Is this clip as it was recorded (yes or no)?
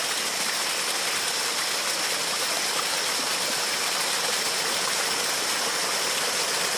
yes